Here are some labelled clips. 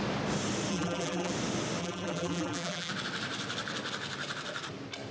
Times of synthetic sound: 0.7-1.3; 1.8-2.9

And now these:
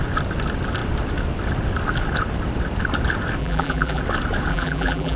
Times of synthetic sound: 3.4-4.0; 4.5-5.2

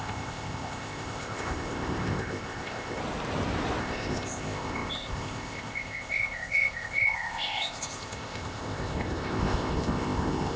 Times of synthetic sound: 0.0-3.0; 3.8-10.6